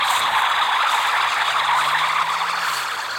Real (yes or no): yes